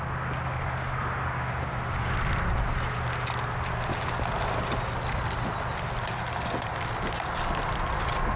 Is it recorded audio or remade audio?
recorded